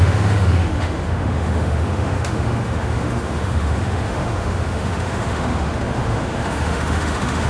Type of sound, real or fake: fake